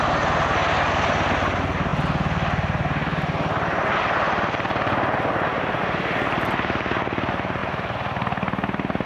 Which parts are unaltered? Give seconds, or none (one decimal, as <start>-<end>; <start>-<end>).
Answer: 0.0-9.1